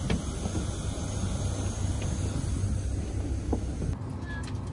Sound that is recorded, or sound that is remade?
recorded